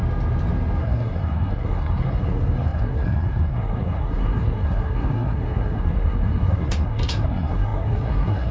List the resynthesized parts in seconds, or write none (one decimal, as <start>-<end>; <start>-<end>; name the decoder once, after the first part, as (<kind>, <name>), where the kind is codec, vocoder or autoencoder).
0.8-8.5 (codec, SNAC)